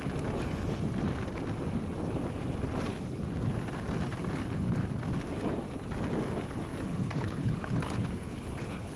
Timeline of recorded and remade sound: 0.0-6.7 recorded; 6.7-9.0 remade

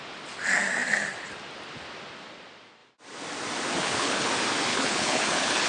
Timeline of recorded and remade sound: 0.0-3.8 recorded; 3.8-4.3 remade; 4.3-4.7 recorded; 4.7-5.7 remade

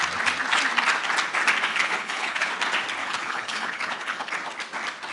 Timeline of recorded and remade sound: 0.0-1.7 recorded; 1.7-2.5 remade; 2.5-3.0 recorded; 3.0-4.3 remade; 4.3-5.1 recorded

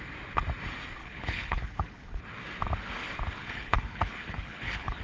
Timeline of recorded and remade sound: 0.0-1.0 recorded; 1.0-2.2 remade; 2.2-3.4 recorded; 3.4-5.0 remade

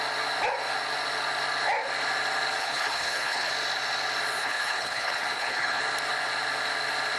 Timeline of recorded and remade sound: 0.0-2.6 recorded; 2.6-3.5 remade; 3.5-4.4 recorded; 4.4-5.8 remade; 5.8-7.2 recorded